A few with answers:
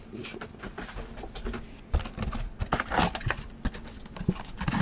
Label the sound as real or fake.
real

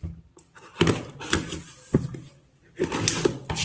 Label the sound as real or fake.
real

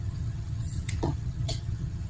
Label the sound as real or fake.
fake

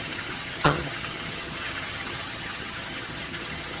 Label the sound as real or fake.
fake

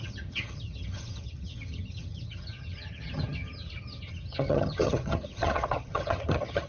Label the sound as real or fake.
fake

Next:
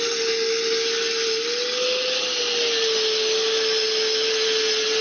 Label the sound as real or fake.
real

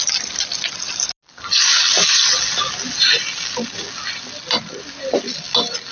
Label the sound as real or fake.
real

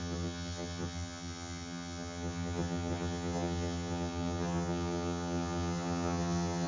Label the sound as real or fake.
fake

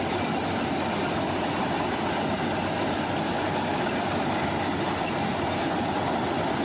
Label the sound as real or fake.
real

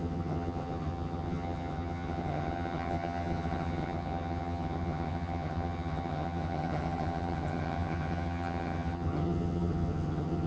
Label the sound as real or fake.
fake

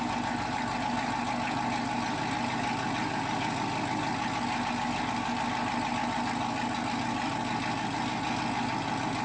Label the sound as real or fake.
real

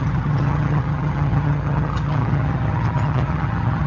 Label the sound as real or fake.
fake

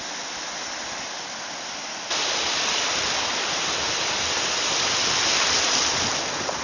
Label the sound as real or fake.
real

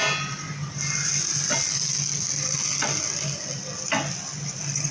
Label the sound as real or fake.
real